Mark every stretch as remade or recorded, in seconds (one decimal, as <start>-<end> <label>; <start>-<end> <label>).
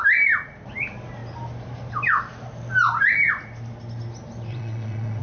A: 0.0-4.5 recorded; 4.5-5.2 remade